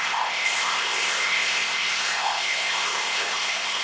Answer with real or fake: fake